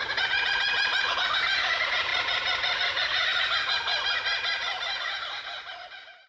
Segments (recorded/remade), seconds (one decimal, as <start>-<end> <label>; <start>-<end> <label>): 0.0-6.3 remade